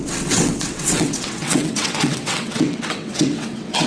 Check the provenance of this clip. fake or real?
fake